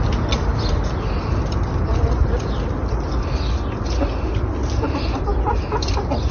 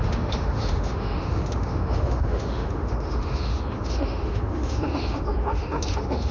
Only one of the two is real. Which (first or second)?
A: first